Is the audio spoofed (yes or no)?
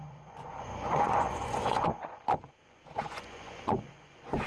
yes